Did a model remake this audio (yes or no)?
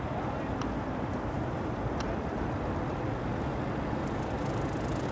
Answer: no